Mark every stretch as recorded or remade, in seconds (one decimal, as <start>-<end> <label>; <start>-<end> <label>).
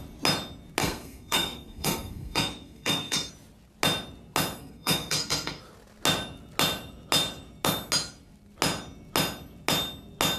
0.0-0.8 recorded; 0.8-3.3 remade; 3.3-4.6 recorded; 4.6-5.6 remade; 5.6-10.4 recorded